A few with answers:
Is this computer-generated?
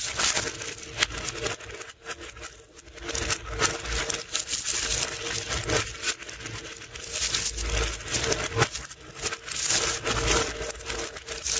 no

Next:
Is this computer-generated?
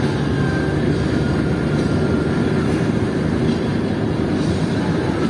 no